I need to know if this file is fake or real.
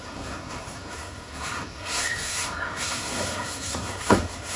fake